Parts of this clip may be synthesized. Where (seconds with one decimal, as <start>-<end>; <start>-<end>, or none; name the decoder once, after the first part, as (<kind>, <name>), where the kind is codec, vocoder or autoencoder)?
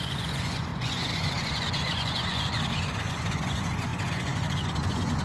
0.0-5.2 (vocoder, Vocos)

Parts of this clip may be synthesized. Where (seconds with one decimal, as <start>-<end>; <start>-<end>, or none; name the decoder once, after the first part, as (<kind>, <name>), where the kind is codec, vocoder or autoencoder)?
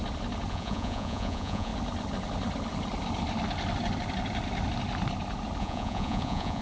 0.5-1.7 (vocoder, Vocos); 5.6-6.6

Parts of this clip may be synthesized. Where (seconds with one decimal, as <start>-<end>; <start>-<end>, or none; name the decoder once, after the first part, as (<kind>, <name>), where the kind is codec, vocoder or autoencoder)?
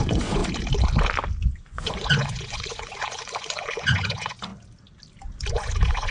0.0-0.4 (vocoder, Vocos); 1.5-4.5; 5.5-6.1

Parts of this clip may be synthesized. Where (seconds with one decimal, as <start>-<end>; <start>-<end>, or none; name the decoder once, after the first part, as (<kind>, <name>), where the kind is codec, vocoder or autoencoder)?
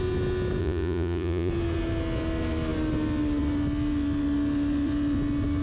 0.6-1.5 (vocoder, Vocos)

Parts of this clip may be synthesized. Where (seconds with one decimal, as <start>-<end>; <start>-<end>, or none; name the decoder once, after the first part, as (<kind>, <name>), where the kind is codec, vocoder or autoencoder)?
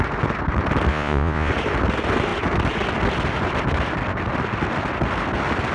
0.9-1.5 (vocoder, Vocos)